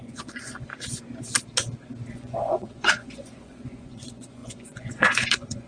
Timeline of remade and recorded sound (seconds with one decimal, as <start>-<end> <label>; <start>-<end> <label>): 0.0-0.7 remade; 0.7-2.1 recorded; 2.1-5.7 remade